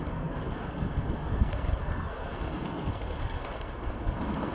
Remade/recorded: remade